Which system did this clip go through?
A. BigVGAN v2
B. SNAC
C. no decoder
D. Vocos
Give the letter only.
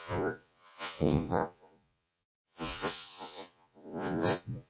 D